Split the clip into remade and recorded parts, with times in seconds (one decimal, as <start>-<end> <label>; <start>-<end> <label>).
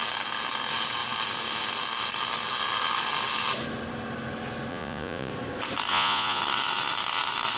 0.0-4.7 recorded; 4.7-5.3 remade; 5.3-5.9 recorded; 5.9-6.4 remade; 6.4-7.6 recorded